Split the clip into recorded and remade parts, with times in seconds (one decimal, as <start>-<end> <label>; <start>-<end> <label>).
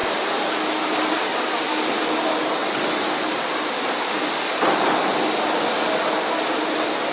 0.0-7.1 recorded